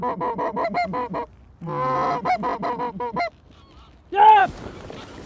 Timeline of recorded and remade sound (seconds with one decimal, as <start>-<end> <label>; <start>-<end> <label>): 0.0-5.3 recorded